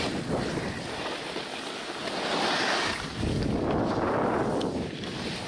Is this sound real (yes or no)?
yes